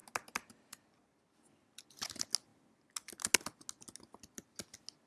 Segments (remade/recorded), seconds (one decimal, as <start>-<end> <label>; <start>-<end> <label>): 0.0-5.1 recorded